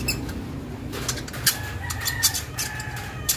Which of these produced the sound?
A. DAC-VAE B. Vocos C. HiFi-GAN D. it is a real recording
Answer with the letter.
D